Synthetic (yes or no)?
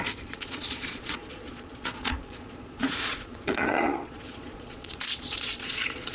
yes